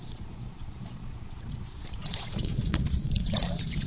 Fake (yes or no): yes